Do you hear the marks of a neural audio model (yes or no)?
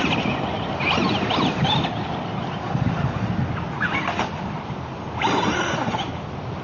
no